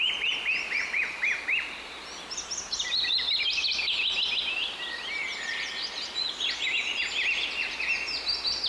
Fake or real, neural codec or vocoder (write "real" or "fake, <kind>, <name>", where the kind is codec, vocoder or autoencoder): real